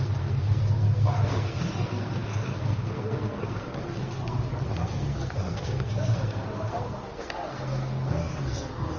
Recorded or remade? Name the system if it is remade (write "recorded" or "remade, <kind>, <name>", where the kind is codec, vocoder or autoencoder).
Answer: remade, codec, SNAC